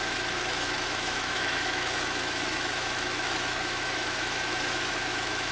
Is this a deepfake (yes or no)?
yes